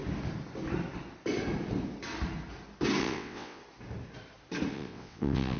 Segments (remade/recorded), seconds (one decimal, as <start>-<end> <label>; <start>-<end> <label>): 0.0-3.0 recorded; 3.0-3.6 remade; 3.6-4.7 recorded; 4.7-5.6 remade